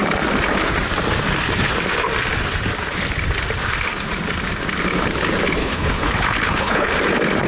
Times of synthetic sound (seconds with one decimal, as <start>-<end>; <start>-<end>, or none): 5.6-6.9

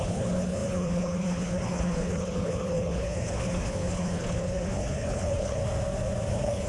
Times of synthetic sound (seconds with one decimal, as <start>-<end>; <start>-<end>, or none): 0.0-5.6; 6.3-6.7